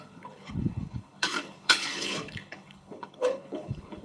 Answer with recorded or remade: remade